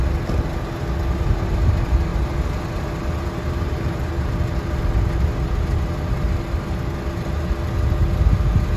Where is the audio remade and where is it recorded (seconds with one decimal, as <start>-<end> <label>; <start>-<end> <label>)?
0.0-2.1 recorded; 2.1-4.1 remade; 4.1-8.8 recorded